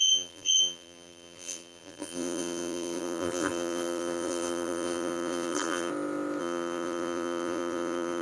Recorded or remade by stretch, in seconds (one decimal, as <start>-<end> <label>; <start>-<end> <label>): 0.0-5.9 remade; 5.9-6.4 recorded; 6.4-8.2 remade